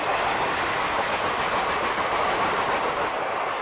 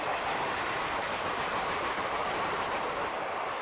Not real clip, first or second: second